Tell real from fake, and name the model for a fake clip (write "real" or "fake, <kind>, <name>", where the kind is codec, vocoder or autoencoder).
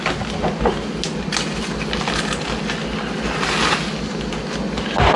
real